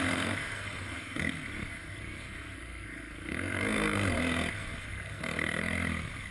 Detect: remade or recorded remade